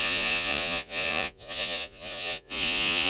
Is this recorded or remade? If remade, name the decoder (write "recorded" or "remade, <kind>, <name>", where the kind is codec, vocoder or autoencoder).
remade, vocoder, Vocos